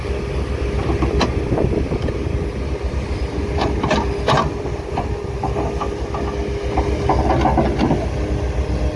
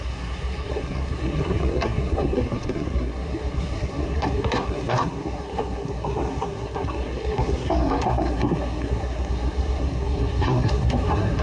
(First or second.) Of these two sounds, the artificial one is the second